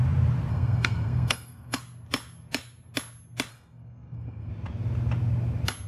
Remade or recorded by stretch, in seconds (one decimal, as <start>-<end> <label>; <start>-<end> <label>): 0.0-0.5 recorded; 0.5-1.8 remade; 1.8-3.5 recorded; 3.5-4.5 remade; 4.5-5.9 recorded